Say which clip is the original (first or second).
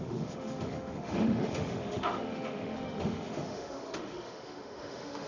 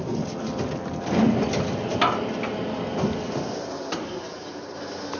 second